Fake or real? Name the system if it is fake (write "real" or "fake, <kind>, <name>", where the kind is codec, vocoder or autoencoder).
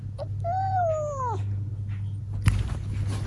real